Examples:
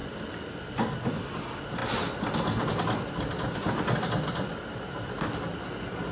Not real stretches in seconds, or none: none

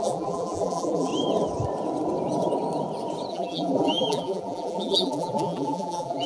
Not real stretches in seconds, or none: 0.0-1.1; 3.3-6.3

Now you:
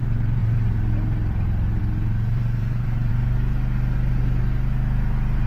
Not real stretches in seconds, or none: 0.0-3.1

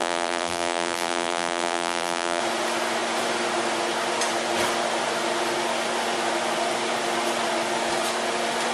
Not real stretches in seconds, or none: 0.0-2.4

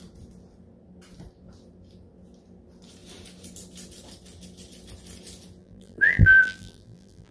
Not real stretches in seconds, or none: 5.6-7.3

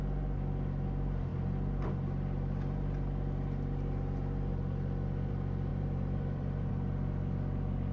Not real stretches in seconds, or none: 5.7-6.7

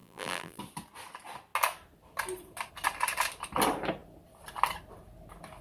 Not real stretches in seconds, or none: 0.0-0.6

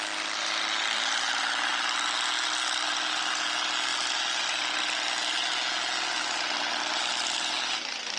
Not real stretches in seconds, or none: none